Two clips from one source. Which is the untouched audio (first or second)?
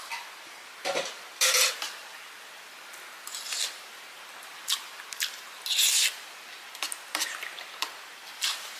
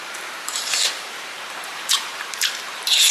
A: first